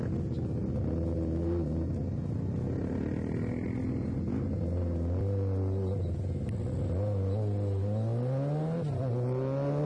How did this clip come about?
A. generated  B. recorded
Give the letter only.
B